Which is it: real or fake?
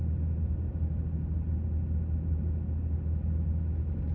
real